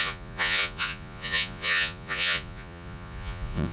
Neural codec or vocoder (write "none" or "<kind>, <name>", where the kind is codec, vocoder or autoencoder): vocoder, Vocos